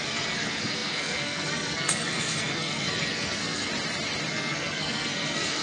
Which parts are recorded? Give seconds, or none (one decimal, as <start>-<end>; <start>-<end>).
3.7-4.3